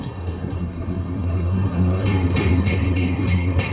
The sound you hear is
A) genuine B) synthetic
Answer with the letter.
B